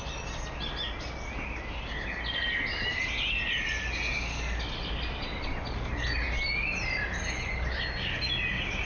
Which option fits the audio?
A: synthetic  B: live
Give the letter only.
B